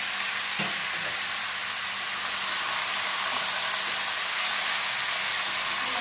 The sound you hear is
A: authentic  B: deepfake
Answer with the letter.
A